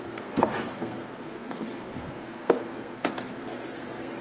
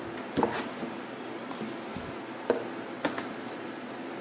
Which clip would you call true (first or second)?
second